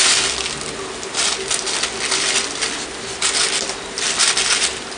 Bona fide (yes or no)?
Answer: yes